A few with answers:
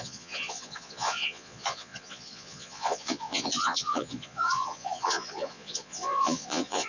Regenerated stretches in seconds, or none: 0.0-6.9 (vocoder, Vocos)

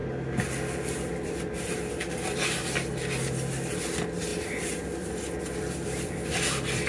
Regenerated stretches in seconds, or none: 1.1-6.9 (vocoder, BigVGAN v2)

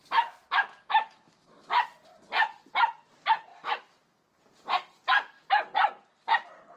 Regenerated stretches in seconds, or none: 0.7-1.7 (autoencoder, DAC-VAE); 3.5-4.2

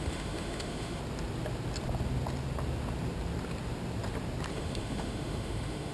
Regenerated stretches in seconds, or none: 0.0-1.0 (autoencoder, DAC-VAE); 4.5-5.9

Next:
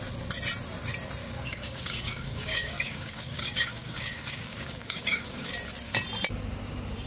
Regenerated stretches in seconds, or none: 1.2-5.5 (codec, DAC)

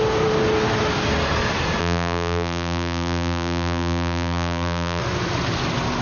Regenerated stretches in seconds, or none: 1.8-5.0 (vocoder, BigVGAN v2)

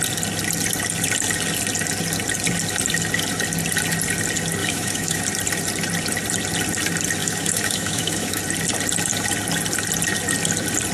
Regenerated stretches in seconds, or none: 4.6-5.2 (autoencoder, DAC-VAE); 7.2-8.4

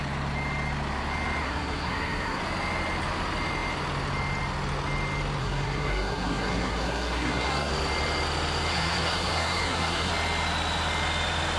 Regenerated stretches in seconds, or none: 1.4-2.4 (codec, SNAC); 5.4-7.7; 8.7-10.1